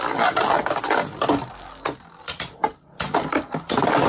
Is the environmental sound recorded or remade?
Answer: recorded